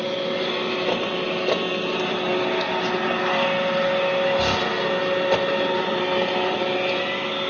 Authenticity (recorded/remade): recorded